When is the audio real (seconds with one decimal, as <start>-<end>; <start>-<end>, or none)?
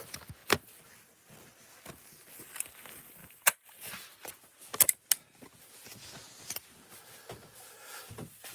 0.0-3.2; 3.9-8.5